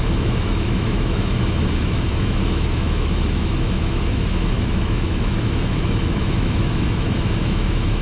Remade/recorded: remade